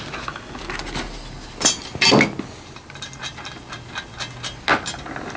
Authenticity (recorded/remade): recorded